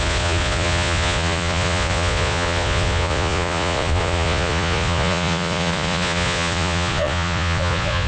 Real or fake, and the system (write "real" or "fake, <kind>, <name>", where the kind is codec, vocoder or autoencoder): fake, vocoder, Vocos